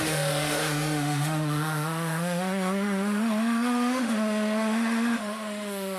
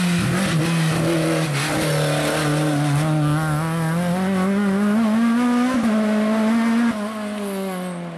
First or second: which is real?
second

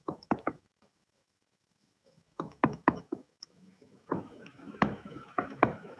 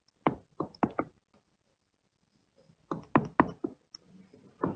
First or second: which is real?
second